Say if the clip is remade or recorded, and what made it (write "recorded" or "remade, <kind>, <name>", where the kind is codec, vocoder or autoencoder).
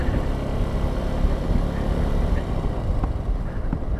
recorded